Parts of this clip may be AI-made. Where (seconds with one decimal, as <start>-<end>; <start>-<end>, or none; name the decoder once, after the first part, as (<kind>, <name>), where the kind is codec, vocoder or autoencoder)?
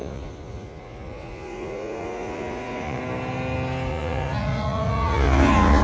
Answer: 0.0-3.0 (vocoder, Vocos); 3.9-5.8